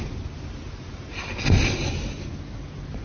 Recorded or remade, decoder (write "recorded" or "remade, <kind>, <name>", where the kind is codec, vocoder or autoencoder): recorded